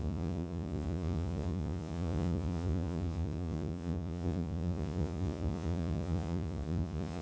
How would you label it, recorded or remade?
remade